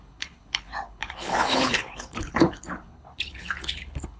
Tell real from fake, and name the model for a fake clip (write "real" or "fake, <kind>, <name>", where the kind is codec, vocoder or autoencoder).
fake, codec, HILCodec